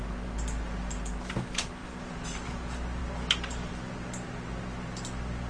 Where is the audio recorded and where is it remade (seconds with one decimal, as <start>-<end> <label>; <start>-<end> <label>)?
0.0-5.5 recorded